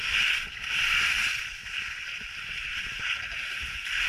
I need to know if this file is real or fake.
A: real